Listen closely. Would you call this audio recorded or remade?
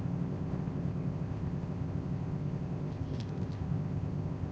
remade